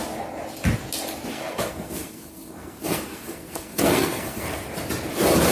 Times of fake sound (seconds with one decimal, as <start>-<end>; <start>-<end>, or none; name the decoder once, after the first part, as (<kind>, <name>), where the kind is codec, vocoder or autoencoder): 1.3-4.6 (codec, SNAC)